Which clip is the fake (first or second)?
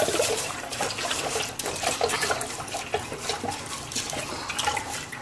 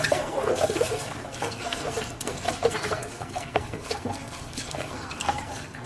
second